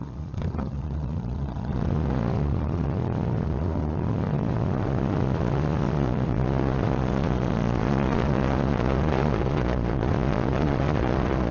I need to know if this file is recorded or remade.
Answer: remade